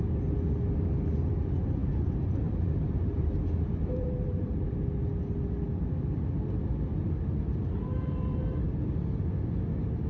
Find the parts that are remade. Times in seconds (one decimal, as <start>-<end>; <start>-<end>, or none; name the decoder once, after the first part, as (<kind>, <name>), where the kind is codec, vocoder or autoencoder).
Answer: 1.8-4.9 (vocoder, BigVGAN v2); 7.5-8.4